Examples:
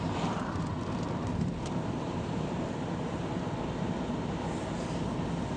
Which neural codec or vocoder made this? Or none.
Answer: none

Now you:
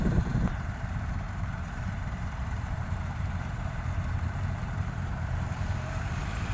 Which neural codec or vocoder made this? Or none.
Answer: vocoder, BigVGAN v2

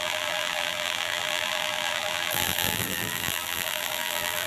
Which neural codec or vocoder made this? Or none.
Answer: vocoder, BigVGAN v2